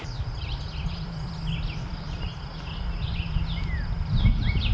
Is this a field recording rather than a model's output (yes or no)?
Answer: yes